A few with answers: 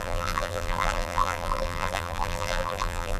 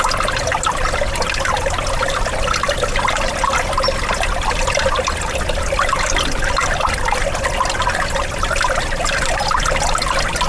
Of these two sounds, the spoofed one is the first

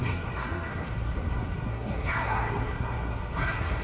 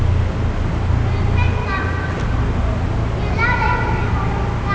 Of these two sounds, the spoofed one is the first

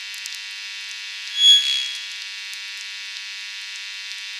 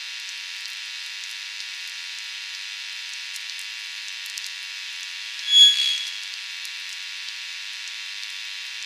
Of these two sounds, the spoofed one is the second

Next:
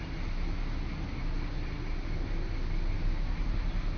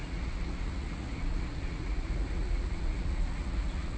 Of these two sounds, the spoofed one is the second